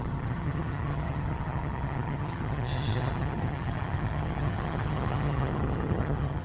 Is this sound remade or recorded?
remade